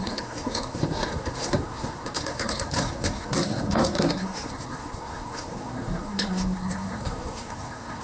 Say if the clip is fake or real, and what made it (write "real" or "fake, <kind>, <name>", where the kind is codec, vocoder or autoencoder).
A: fake, codec, SNAC